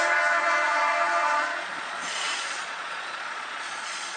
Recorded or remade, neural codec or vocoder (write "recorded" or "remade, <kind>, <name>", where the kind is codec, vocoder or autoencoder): remade, vocoder, Vocos